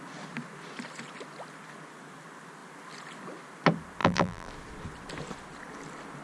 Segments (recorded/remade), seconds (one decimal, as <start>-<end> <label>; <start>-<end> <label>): 0.0-4.0 recorded; 4.0-4.5 remade; 4.5-6.2 recorded